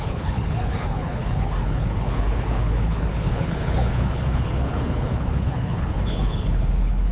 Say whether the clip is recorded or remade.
remade